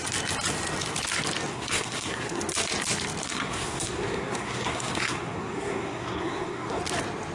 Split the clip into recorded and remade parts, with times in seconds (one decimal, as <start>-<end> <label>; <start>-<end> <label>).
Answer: 0.0-1.5 recorded; 1.5-2.4 remade; 2.4-3.2 recorded; 3.2-6.8 remade; 6.8-7.3 recorded